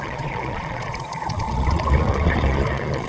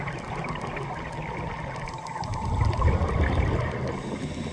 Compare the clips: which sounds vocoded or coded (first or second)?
first